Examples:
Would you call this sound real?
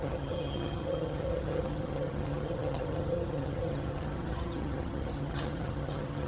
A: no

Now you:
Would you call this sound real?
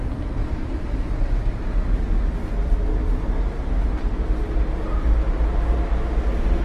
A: yes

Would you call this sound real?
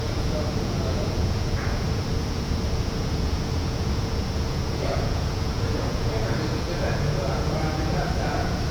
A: no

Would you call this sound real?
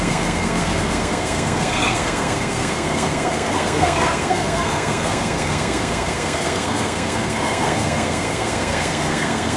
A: no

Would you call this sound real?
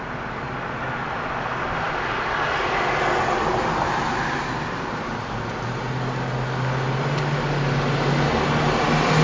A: yes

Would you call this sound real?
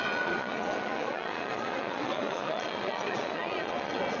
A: no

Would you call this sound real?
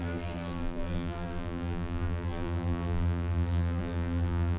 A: no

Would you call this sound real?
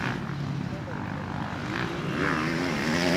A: yes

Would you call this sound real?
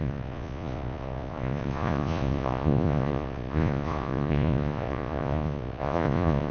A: no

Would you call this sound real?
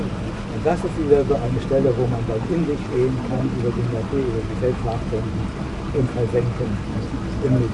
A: yes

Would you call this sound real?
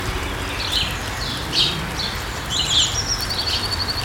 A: yes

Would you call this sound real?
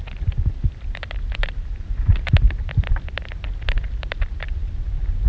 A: no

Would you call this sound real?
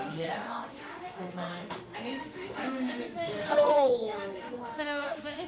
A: no